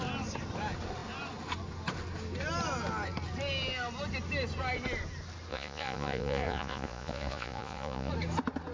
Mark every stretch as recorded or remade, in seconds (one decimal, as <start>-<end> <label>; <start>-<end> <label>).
0.0-5.5 recorded; 5.5-8.1 remade; 8.1-8.7 recorded